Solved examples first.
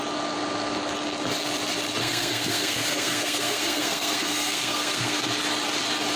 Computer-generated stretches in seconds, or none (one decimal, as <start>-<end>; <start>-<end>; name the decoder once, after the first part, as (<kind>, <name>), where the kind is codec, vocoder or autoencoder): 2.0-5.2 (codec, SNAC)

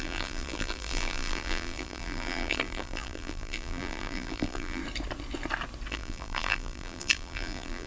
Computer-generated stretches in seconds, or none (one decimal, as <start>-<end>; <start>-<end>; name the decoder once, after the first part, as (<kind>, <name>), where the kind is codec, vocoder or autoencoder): 0.0-4.8 (vocoder, BigVGAN v2); 5.9-7.9

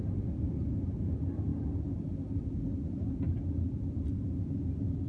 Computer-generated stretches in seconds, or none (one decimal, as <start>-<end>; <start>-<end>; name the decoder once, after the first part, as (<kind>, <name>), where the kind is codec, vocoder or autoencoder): none

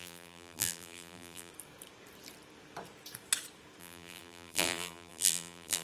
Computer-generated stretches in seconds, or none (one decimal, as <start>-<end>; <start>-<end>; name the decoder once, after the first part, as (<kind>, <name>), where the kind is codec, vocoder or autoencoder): 0.0-1.5 (vocoder, BigVGAN v2); 3.8-5.8

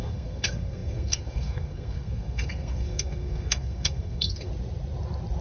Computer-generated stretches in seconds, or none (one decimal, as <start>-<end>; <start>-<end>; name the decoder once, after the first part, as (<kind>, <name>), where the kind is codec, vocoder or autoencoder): 0.0-4.5 (codec, SNAC)